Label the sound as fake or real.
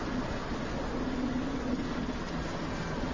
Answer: real